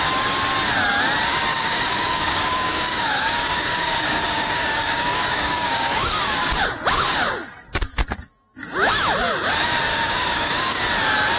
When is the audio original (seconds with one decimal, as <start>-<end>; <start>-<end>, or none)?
0.0-1.5; 6.1-9.9; 10.8-11.4